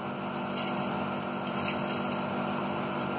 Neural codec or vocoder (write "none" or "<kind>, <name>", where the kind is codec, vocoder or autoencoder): none